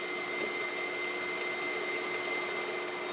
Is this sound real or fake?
real